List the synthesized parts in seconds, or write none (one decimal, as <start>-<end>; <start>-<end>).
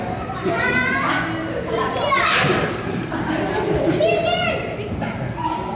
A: 1.4-3.3